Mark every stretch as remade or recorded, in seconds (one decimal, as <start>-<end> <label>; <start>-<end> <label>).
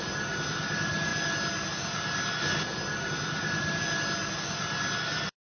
0.0-5.5 recorded